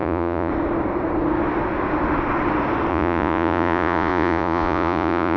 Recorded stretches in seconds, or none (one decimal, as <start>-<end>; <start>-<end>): 0.5-2.9